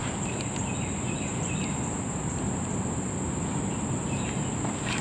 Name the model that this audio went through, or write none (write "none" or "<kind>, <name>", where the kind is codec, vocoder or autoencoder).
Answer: none